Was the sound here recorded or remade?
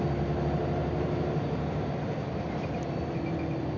recorded